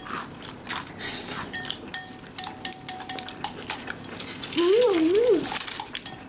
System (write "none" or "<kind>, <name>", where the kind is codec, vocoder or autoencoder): vocoder, BigVGAN v2